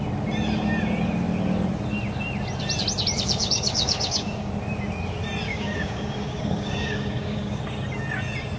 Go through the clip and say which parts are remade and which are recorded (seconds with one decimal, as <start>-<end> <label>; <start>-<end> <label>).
0.0-3.4 recorded; 3.4-4.5 remade; 4.5-5.5 recorded; 5.5-7.6 remade; 7.6-8.6 recorded